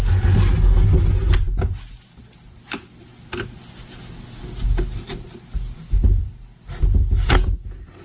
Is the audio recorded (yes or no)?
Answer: yes